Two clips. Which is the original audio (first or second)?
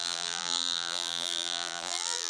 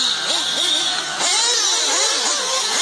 second